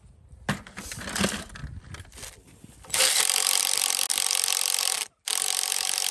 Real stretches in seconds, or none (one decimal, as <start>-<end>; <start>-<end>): 0.0-6.1